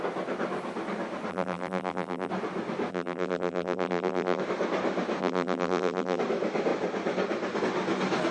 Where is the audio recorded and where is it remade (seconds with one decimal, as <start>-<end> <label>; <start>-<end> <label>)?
0.0-1.3 recorded; 1.3-2.3 remade; 2.3-2.9 recorded; 2.9-4.4 remade; 4.4-5.2 recorded; 5.2-6.2 remade; 6.2-8.3 recorded